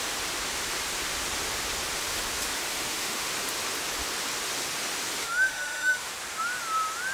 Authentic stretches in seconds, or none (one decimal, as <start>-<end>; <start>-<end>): 0.0-2.7; 3.3-5.2; 6.1-7.1